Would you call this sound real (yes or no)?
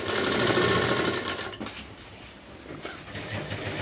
yes